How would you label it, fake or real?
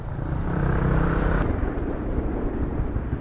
fake